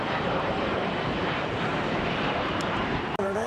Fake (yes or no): yes